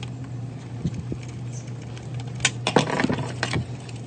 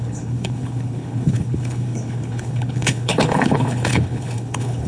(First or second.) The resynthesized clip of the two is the second